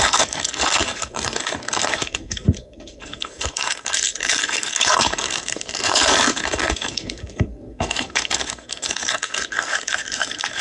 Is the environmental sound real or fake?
fake